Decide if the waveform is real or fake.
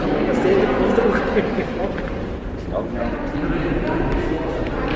fake